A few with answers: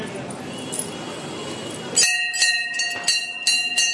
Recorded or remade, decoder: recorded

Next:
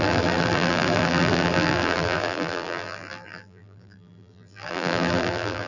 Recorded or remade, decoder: remade, vocoder, BigVGAN v2